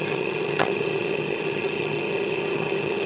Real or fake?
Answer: fake